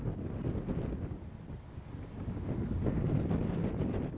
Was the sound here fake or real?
real